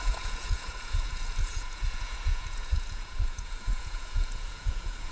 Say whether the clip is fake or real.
fake